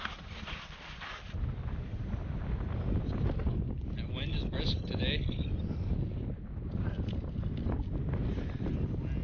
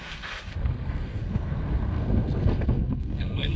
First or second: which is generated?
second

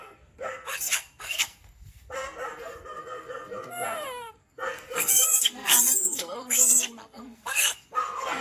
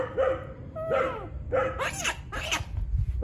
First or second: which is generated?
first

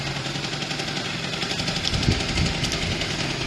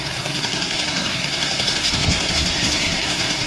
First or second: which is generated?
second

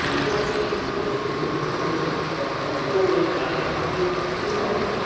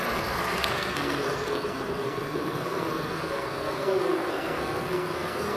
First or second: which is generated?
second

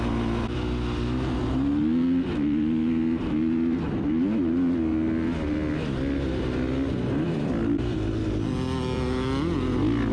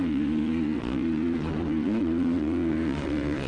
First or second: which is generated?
second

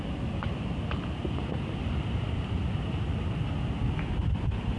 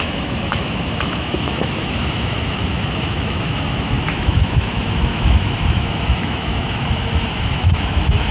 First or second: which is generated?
second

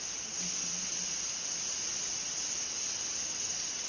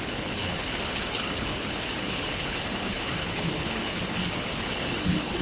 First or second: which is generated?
second